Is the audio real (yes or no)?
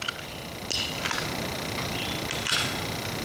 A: yes